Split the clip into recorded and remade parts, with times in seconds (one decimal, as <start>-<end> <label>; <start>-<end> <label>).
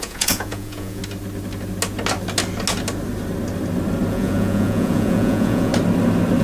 0.0-1.0 remade; 1.0-4.1 recorded; 4.1-5.7 remade; 5.7-6.4 recorded